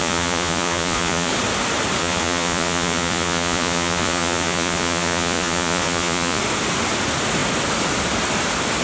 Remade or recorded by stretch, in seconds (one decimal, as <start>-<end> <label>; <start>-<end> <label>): 0.0-1.3 remade; 1.3-2.0 recorded; 2.0-6.4 remade; 6.4-8.8 recorded